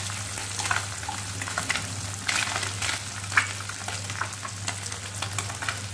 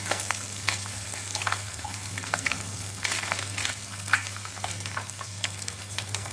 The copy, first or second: second